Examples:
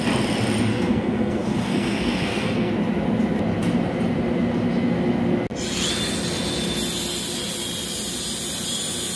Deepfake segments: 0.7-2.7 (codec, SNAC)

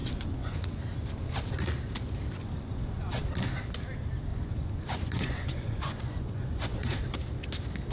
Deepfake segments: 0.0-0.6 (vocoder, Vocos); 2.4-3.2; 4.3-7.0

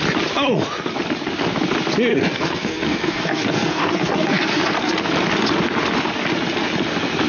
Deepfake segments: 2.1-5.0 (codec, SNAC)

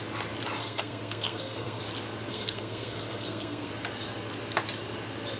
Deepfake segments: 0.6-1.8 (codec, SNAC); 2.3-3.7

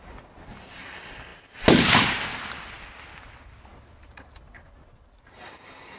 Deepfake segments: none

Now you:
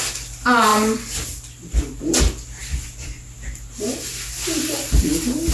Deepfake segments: none

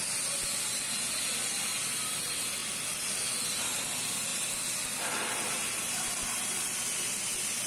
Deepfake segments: none